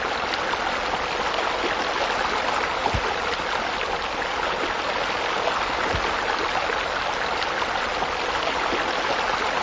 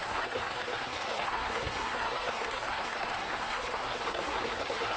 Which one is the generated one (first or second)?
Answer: second